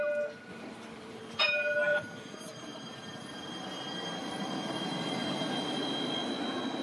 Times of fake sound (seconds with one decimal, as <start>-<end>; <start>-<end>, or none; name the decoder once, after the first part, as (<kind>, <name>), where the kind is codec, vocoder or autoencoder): 0.5-1.4 (vocoder, BigVGAN v2); 1.9-6.0